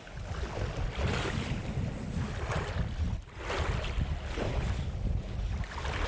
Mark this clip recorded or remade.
recorded